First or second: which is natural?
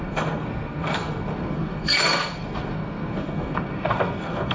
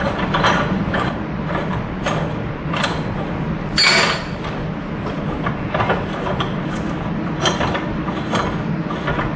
second